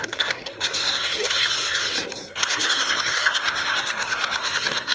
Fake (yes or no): yes